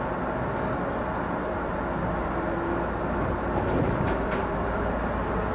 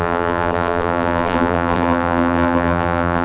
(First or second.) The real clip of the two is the first